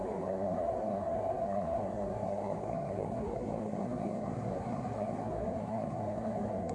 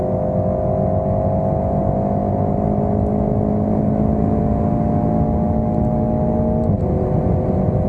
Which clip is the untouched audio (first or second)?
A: second